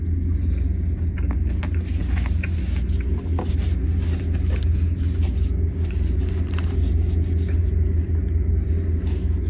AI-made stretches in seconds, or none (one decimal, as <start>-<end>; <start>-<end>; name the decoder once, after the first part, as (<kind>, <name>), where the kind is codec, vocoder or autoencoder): 7.6-8.7 (vocoder, BigVGAN v2)